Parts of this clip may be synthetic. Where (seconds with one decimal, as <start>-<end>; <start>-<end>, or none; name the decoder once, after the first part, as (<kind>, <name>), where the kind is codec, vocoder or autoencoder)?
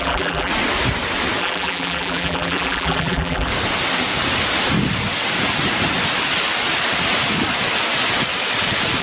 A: 0.0-0.5 (vocoder, BigVGAN v2); 1.4-3.5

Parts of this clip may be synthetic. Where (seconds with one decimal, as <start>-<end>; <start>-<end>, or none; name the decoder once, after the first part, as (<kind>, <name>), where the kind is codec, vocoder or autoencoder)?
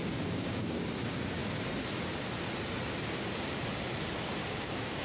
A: 0.0-0.9 (codec, DAC); 4.4-5.0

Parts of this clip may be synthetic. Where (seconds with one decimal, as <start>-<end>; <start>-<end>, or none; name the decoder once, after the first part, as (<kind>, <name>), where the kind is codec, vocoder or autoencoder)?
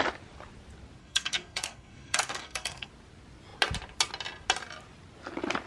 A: 1.0-2.9 (codec, SNAC)